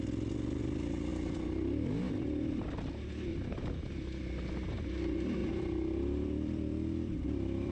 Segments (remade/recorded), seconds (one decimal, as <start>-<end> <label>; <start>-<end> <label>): 0.0-3.3 recorded; 3.3-4.2 remade; 4.2-5.4 recorded; 5.4-7.7 remade